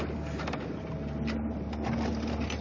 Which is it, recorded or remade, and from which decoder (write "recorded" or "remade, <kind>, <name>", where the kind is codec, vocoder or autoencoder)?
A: recorded